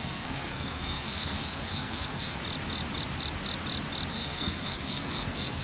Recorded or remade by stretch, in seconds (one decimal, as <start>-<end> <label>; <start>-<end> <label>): 0.0-2.4 remade; 2.4-4.1 recorded; 4.1-5.6 remade